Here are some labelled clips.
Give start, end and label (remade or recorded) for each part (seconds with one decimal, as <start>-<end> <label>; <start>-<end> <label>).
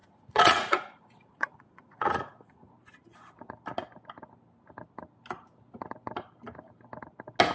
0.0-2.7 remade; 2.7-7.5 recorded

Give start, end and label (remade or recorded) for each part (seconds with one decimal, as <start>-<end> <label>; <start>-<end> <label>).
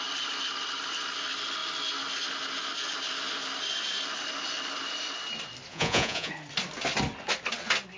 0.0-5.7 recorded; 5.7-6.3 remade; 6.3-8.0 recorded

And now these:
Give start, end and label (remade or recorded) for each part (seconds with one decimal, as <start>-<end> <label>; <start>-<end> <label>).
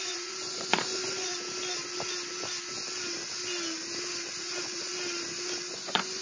0.0-1.3 remade; 1.3-4.4 recorded; 4.4-4.9 remade; 4.9-5.7 recorded; 5.7-6.2 remade